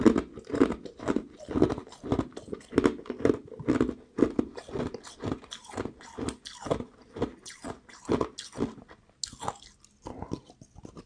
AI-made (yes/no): no